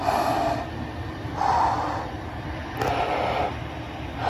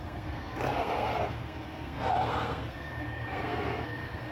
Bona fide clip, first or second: first